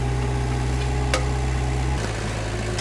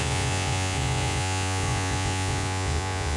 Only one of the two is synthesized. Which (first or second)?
second